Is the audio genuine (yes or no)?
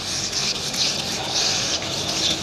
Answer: yes